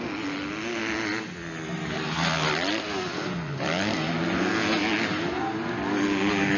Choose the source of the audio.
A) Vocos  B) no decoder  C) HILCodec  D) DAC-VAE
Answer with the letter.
B